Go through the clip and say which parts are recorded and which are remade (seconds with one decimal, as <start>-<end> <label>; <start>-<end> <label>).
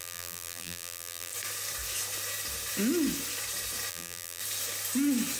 0.0-1.3 remade; 1.3-3.9 recorded; 3.9-4.4 remade; 4.4-5.4 recorded